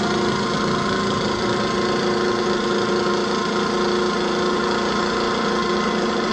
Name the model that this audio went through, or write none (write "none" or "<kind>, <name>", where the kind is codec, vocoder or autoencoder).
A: none